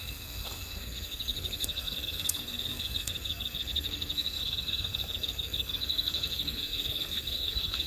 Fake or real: fake